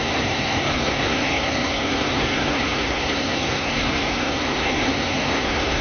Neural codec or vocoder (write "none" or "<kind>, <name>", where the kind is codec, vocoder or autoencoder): codec, SNAC